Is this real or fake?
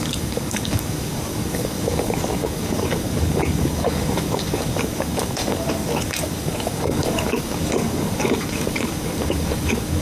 fake